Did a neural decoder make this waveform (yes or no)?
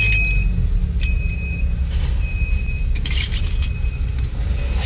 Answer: no